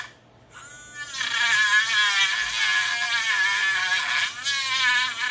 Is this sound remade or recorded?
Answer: recorded